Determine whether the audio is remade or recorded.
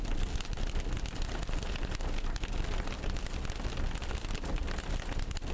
recorded